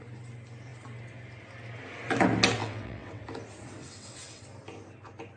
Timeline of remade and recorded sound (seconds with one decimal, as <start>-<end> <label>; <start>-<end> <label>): 0.0-2.6 recorded; 2.6-3.2 remade; 3.2-3.8 recorded; 3.8-4.4 remade; 4.4-5.4 recorded